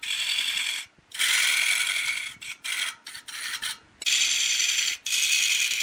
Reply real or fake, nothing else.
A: real